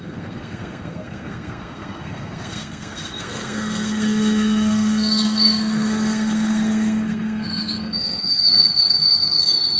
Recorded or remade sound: remade